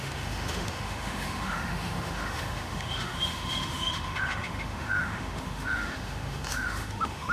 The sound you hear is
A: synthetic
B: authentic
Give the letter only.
A